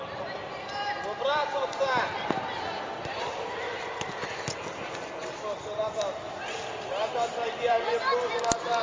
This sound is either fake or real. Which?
fake